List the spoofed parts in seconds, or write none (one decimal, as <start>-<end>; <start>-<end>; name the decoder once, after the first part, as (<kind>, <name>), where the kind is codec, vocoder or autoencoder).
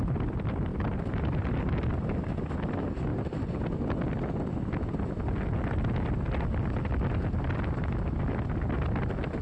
0.7-1.4 (vocoder, BigVGAN v2); 3.1-3.6